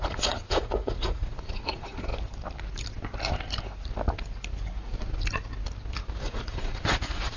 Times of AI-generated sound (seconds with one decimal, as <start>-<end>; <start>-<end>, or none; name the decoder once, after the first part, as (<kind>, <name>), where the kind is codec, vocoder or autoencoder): 0.0-2.1 (vocoder, Vocos); 6.2-7.4